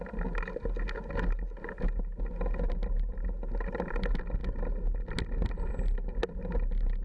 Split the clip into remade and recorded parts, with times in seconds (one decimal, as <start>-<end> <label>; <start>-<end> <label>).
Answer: 0.0-7.0 recorded